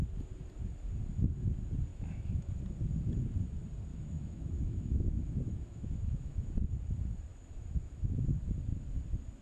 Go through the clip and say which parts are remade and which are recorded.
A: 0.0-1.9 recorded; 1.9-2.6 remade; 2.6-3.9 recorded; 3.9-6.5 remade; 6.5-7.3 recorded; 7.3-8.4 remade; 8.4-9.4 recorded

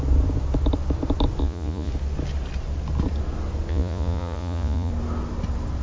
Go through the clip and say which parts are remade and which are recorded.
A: 0.0-1.4 recorded; 1.4-1.9 remade; 1.9-3.7 recorded; 3.7-4.9 remade; 4.9-5.8 recorded

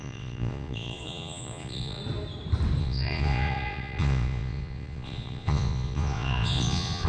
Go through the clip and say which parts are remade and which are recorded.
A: 0.0-2.0 remade; 2.0-2.8 recorded; 2.8-7.1 remade

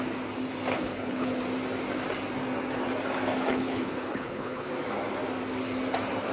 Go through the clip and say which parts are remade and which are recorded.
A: 0.0-0.7 recorded; 0.7-1.4 remade; 1.4-3.4 recorded; 3.4-4.7 remade; 4.7-6.3 recorded

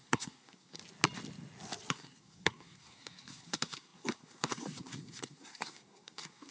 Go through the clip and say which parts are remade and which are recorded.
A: 0.0-0.8 remade; 0.8-1.9 recorded; 1.9-6.5 remade

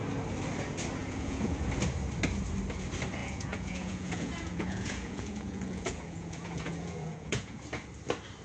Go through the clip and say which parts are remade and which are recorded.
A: 0.0-1.0 recorded; 1.0-1.7 remade; 1.7-3.2 recorded; 3.2-7.6 remade; 7.6-8.4 recorded

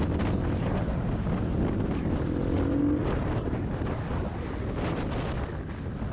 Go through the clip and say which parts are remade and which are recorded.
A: 0.0-6.1 recorded